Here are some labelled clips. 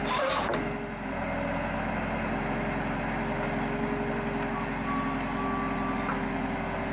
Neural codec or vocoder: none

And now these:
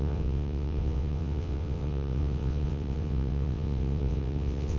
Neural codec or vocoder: vocoder, WaveNeXt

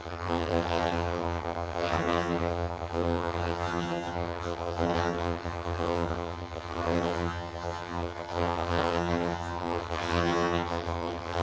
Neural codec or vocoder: vocoder, HiFi-GAN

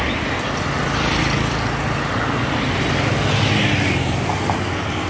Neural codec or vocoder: none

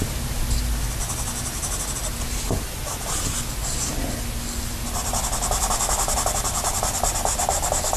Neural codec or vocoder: none